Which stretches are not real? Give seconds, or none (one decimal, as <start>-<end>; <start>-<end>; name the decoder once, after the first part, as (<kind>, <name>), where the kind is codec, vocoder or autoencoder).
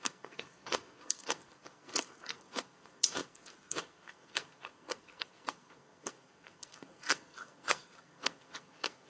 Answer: 0.0-9.1 (codec, SNAC)